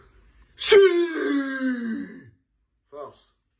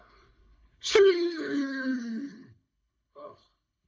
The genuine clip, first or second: first